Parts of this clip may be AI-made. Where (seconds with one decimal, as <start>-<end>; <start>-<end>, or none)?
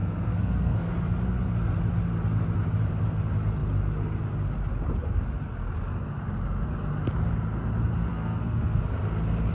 0.0-0.9; 8.1-8.8